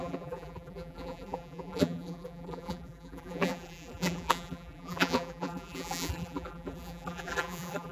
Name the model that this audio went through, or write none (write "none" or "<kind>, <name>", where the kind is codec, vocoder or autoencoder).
vocoder, BigVGAN v2